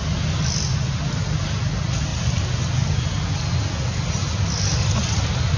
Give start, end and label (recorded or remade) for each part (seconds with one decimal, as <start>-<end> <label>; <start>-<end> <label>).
0.0-5.6 recorded